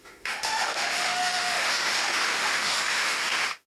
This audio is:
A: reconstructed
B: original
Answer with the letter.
A